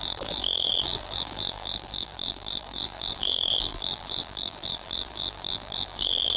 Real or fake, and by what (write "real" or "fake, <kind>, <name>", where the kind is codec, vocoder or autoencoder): fake, vocoder, BigVGAN v2